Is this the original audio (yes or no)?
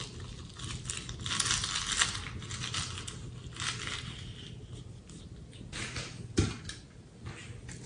yes